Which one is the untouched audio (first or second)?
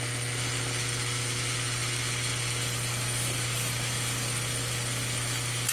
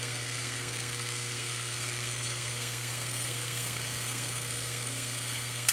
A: first